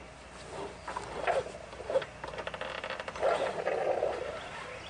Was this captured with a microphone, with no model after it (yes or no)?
yes